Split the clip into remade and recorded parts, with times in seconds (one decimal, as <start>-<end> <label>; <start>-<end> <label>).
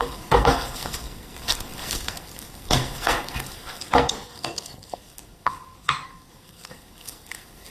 0.0-7.7 remade